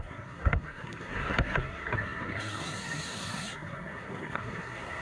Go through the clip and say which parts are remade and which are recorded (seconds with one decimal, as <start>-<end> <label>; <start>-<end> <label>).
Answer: 0.0-5.0 remade